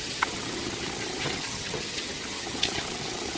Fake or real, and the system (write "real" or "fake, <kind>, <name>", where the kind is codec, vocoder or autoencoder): fake, vocoder, HiFi-GAN